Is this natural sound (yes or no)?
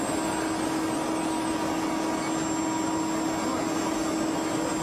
yes